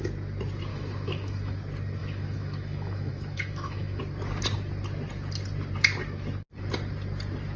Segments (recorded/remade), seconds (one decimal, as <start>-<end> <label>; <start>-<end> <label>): 0.0-0.7 recorded; 0.7-1.6 remade; 1.6-2.0 recorded; 2.0-4.0 remade; 4.0-7.6 recorded

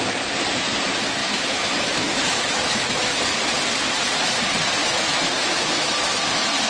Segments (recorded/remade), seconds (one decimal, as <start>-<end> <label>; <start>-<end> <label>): 0.0-1.2 recorded; 1.2-3.2 remade; 3.2-4.8 recorded; 4.8-5.9 remade; 5.9-6.7 recorded

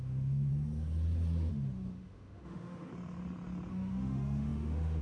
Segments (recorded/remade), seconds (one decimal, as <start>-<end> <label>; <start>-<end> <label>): 0.0-0.5 remade; 0.5-1.5 recorded; 1.5-2.9 remade; 2.9-3.7 recorded; 3.7-5.0 remade

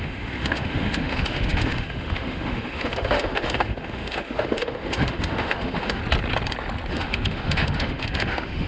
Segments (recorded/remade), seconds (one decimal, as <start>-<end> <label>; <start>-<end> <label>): 0.0-6.0 remade; 6.0-6.9 recorded; 6.9-8.7 remade